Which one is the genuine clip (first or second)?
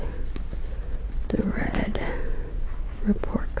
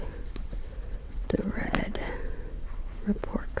first